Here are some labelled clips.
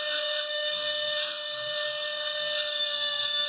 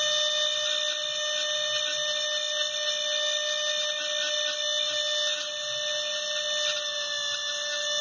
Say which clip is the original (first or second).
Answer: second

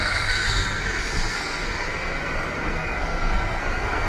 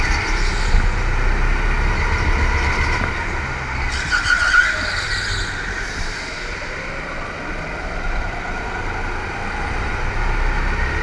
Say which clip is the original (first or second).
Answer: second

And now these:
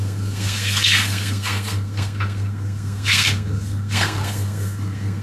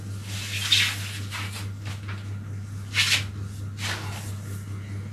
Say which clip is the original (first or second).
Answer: second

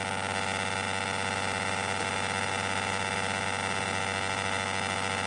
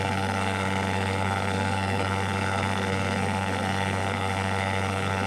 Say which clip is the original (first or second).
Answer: first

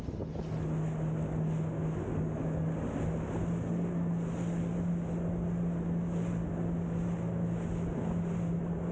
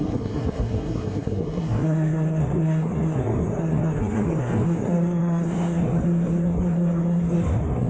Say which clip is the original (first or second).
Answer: first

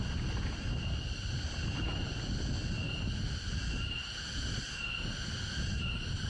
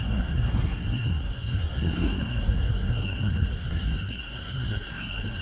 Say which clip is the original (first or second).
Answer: first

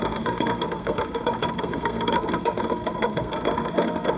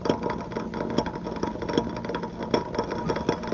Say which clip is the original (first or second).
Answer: second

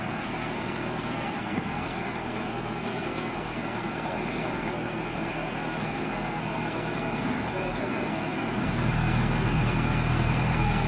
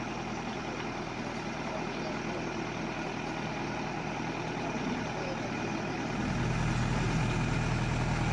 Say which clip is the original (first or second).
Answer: second